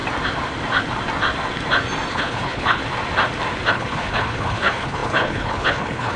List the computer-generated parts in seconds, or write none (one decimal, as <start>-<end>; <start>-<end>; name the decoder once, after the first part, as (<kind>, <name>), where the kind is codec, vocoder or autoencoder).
2.1-2.8 (codec, HILCodec); 3.7-6.2